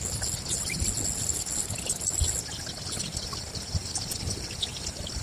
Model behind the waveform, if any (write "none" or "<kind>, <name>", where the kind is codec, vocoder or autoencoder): none